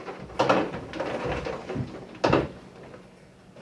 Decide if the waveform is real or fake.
real